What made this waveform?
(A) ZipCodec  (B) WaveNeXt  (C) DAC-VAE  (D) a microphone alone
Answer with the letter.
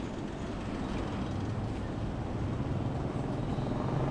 D